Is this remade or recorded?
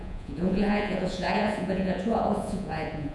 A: remade